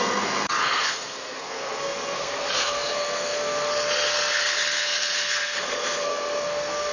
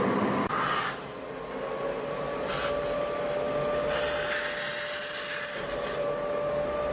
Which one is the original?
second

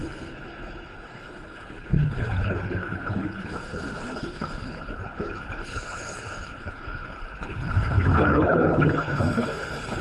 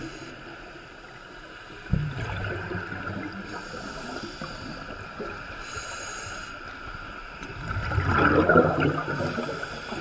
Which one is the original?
second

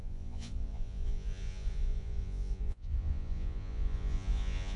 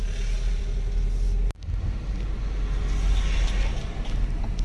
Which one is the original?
second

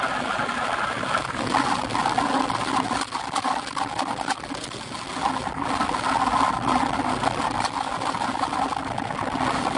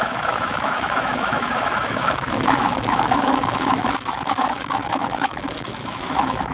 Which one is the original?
first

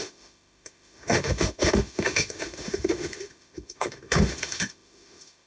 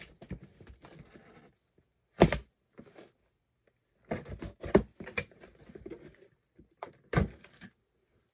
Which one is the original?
second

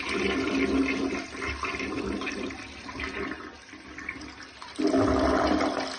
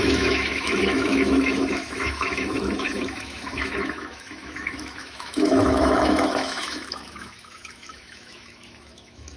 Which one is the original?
first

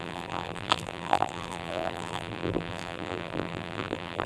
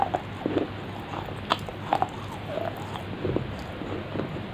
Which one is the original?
second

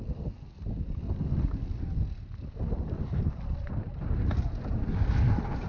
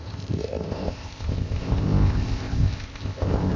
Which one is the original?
first